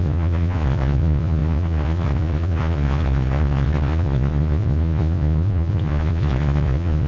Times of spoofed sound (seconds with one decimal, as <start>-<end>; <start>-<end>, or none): 0.0-7.1